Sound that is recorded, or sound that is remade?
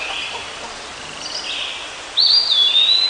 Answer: recorded